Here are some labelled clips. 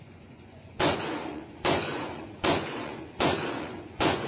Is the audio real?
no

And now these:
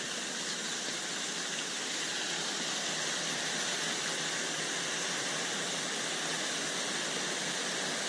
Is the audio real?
yes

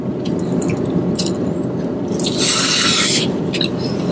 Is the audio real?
yes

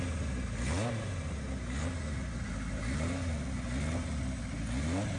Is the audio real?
yes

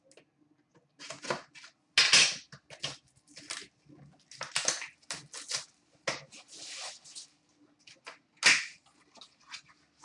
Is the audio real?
yes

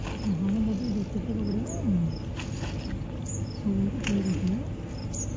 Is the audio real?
yes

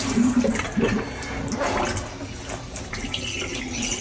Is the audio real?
yes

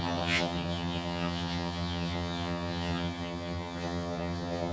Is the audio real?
no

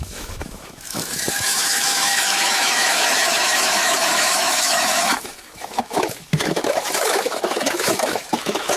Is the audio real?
no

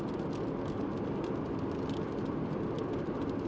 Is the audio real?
yes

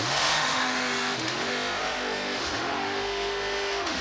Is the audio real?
no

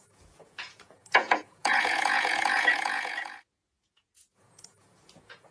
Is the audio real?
no